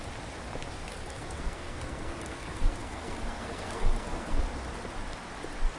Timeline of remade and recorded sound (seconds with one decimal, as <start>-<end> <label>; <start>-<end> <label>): 0.0-0.9 recorded; 0.9-4.4 remade; 4.4-5.8 recorded